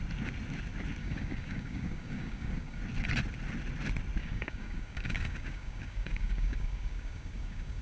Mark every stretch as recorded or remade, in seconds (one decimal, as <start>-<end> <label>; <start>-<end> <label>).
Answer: 0.0-1.0 recorded; 1.0-2.8 remade; 2.8-4.2 recorded; 4.2-7.8 remade